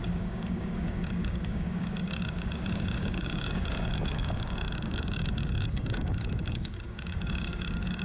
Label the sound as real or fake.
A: fake